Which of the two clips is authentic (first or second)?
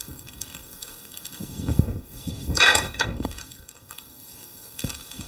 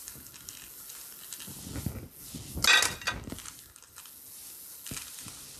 second